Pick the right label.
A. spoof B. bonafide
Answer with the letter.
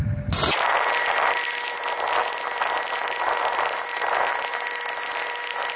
B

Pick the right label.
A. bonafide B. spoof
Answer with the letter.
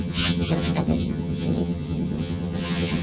B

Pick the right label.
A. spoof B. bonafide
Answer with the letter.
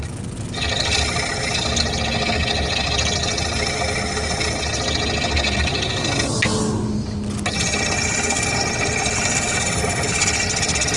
B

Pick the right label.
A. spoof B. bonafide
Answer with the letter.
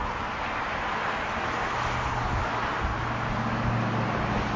B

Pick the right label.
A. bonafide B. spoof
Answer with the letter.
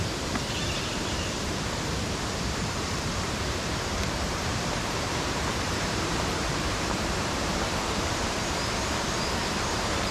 B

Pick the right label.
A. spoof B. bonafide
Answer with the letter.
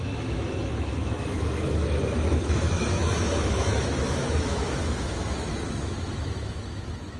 A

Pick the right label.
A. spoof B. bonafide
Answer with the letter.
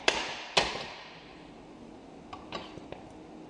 B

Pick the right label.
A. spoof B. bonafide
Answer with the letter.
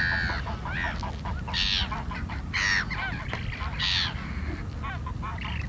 B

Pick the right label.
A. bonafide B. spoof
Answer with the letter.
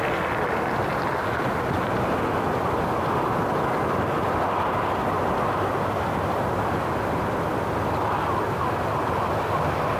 A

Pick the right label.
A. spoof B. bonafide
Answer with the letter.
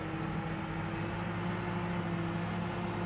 B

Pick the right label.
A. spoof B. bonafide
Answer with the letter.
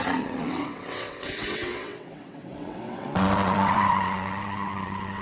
A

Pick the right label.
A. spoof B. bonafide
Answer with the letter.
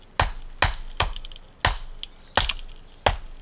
B